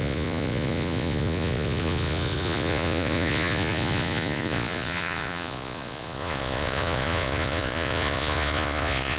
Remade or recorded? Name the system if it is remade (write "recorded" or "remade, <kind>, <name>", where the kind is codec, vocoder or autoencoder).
remade, vocoder, Vocos